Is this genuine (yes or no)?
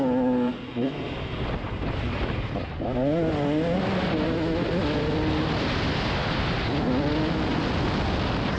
yes